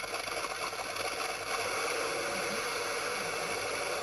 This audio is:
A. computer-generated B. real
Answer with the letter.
B